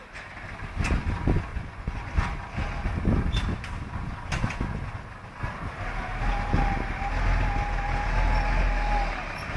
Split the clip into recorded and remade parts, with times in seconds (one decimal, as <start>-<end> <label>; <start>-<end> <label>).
0.0-1.5 recorded; 1.5-2.1 remade; 2.1-9.6 recorded